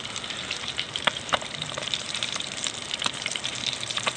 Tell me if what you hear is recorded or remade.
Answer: remade